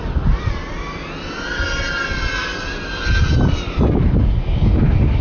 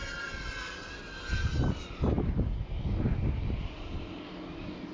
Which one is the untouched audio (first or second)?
first